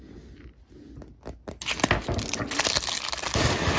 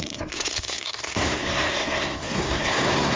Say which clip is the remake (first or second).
second